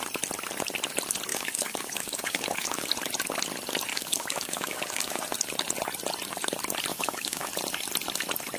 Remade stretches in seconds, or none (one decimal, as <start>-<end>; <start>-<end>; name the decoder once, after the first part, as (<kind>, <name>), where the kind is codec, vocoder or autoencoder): 1.3-2.9 (codec, DAC); 3.9-5.2; 6.9-7.5